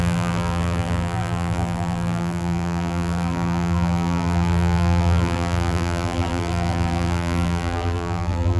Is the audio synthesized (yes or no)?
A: yes